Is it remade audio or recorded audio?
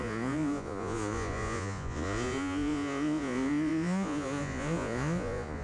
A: remade